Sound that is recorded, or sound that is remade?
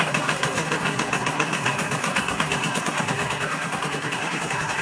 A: remade